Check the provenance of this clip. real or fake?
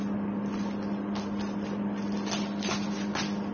real